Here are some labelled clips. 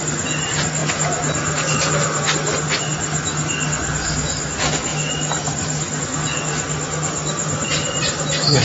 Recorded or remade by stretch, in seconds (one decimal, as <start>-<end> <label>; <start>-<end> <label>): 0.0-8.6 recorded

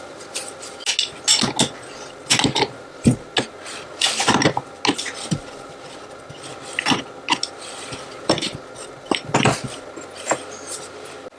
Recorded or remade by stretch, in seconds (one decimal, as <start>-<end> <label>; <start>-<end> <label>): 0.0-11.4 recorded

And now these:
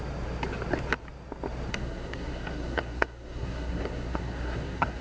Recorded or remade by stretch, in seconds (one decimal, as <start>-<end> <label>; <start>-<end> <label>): 0.0-1.7 recorded; 1.7-5.0 remade

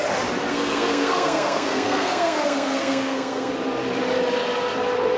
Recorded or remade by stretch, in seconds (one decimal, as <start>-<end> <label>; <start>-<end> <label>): 0.0-0.5 recorded; 0.5-3.5 remade; 3.5-5.2 recorded